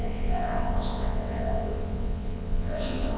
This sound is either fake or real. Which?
fake